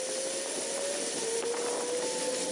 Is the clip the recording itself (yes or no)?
yes